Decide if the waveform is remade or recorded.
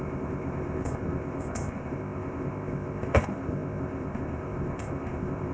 remade